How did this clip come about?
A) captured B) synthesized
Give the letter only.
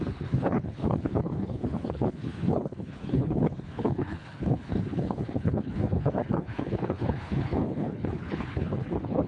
B